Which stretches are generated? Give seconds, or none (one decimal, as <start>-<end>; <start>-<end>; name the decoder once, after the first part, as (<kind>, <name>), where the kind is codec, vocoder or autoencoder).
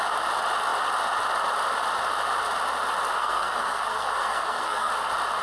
3.2-4.9 (codec, SNAC)